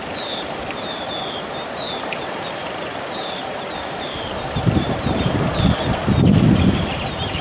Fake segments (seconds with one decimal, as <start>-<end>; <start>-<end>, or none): 0.0-6.0; 6.7-7.4